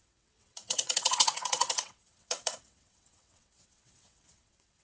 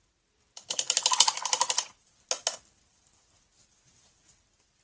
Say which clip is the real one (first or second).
second